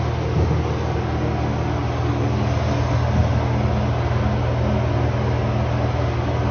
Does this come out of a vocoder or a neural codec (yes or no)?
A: no